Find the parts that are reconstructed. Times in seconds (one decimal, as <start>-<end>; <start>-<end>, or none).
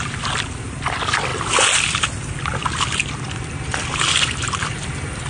none